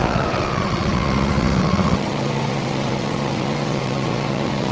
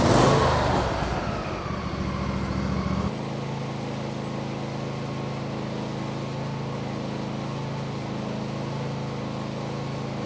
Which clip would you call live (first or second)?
second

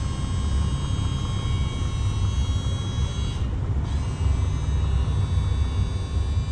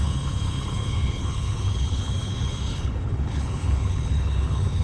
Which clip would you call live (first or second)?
first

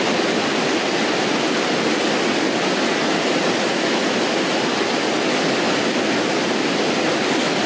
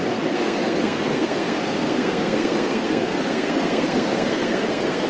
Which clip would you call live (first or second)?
first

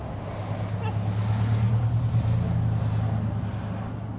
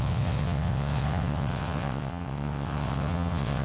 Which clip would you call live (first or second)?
first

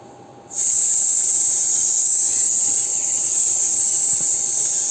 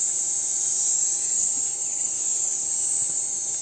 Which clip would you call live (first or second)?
second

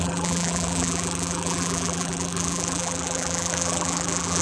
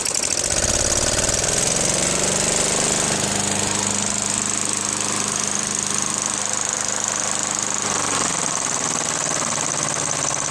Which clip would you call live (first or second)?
second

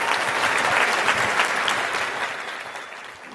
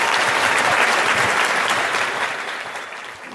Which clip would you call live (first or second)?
first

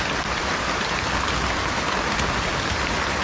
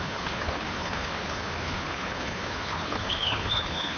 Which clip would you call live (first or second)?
first